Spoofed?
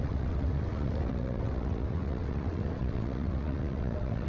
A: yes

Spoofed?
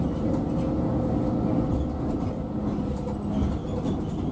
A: no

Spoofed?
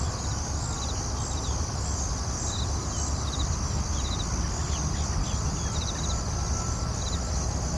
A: no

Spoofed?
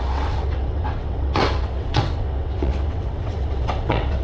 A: yes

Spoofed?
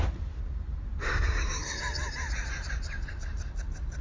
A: no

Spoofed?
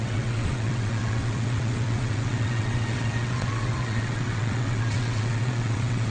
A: yes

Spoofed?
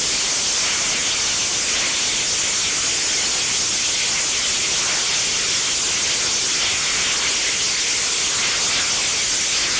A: no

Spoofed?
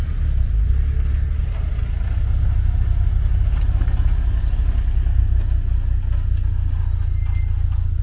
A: no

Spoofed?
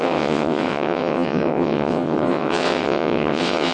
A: yes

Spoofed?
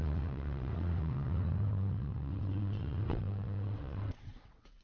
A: yes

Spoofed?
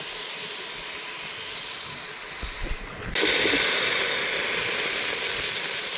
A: no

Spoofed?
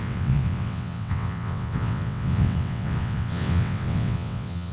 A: yes